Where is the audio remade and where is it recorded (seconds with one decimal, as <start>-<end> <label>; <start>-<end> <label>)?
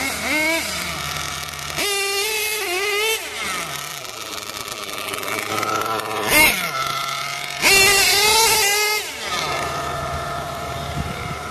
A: 0.0-3.9 recorded; 3.9-5.5 remade; 5.5-11.5 recorded